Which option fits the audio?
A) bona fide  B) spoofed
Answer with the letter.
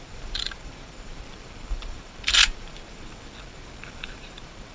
B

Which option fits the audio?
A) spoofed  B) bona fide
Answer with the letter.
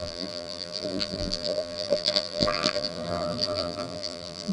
A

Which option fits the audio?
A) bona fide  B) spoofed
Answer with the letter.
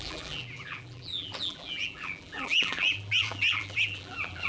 B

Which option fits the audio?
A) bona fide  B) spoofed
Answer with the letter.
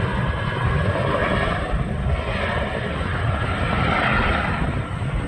A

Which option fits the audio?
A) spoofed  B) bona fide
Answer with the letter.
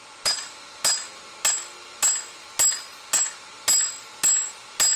B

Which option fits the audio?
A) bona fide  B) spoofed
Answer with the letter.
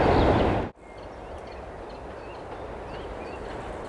A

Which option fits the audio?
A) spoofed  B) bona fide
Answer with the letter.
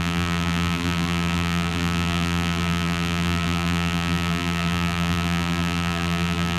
A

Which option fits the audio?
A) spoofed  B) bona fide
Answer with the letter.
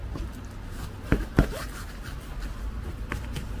B